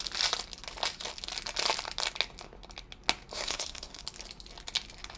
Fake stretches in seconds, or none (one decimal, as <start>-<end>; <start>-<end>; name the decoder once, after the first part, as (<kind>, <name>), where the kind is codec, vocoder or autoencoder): 3.3-4.0 (codec, SNAC)